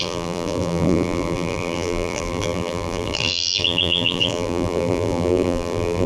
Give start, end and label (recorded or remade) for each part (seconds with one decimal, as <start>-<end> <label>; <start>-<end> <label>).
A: 0.0-6.1 remade